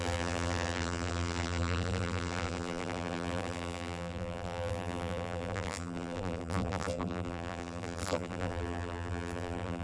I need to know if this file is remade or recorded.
remade